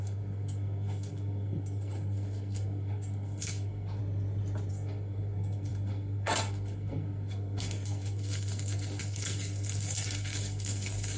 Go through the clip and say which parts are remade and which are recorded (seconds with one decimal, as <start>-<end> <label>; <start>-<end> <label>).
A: 0.0-4.0 remade; 4.0-4.7 recorded; 4.7-11.2 remade